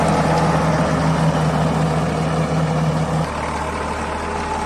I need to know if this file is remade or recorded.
recorded